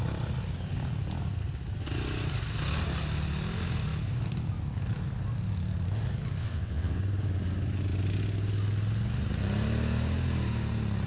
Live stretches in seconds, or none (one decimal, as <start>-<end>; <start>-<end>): 0.0-6.4; 7.0-11.1